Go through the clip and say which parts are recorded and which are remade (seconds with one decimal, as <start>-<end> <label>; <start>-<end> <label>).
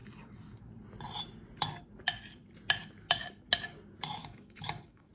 0.0-4.2 recorded; 4.2-5.1 remade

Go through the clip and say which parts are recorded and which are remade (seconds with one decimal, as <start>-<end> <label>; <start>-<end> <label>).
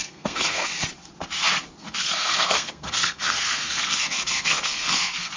0.0-0.7 remade; 0.7-1.8 recorded; 1.8-5.4 remade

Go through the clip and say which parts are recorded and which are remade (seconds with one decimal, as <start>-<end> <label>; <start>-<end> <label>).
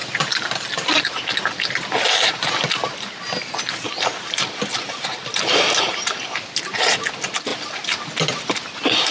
0.0-9.1 recorded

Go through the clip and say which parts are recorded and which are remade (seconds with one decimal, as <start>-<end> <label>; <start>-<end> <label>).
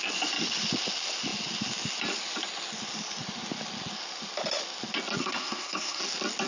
0.0-5.2 recorded; 5.2-6.0 remade; 6.0-6.5 recorded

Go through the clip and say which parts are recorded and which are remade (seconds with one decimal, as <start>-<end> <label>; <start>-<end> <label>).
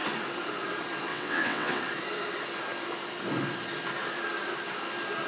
0.0-1.1 recorded; 1.1-1.8 remade; 1.8-5.3 recorded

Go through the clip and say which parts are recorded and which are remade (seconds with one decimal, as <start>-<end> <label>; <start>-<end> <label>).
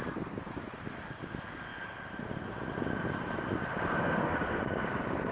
0.0-3.9 recorded; 3.9-4.6 remade; 4.6-5.3 recorded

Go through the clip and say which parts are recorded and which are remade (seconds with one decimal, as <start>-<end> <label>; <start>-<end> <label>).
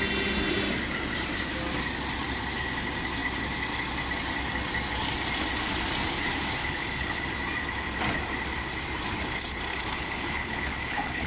0.0-6.6 recorded; 6.6-7.2 remade; 7.2-9.7 recorded; 9.7-11.3 remade